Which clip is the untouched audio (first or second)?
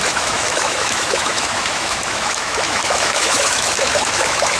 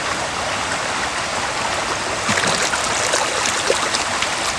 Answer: second